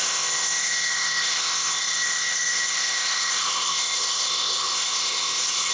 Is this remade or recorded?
remade